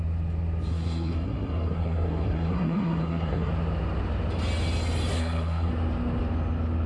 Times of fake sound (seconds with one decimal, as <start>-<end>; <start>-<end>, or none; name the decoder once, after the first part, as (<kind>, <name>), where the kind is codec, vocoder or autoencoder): 0.7-3.5 (codec, SNAC); 5.1-5.7